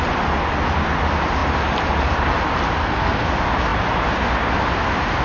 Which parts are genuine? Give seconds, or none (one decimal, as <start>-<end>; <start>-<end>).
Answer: 0.0-2.8; 3.3-5.2